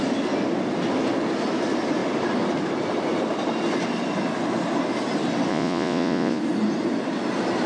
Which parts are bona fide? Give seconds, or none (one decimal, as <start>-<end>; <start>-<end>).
0.0-5.5; 6.4-7.7